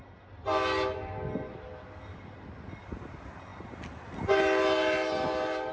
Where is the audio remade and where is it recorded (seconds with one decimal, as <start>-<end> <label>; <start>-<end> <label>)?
0.0-5.7 recorded